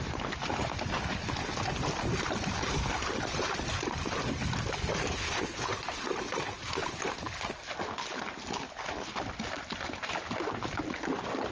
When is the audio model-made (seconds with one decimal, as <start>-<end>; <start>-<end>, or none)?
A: 5.2-5.7